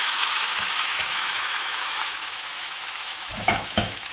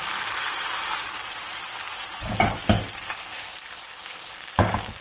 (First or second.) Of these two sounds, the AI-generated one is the first